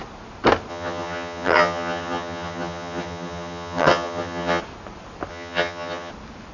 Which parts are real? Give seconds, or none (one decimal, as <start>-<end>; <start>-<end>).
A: 0.0-0.7; 4.6-5.3; 6.1-6.5